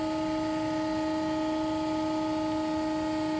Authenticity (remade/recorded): recorded